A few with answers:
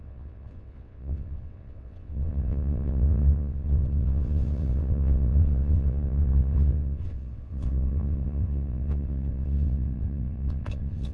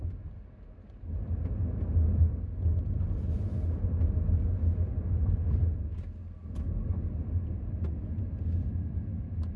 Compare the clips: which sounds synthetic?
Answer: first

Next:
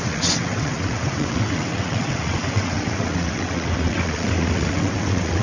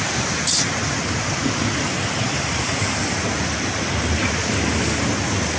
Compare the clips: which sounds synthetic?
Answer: first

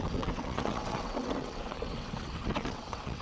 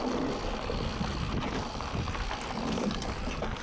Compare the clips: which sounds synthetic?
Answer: first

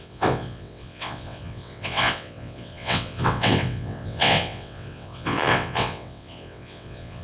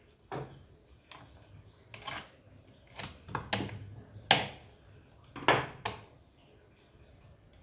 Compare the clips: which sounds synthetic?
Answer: first